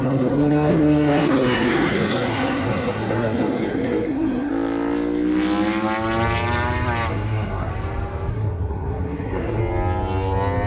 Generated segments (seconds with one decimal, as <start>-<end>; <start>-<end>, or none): 0.0-4.5; 7.1-7.7; 8.3-9.6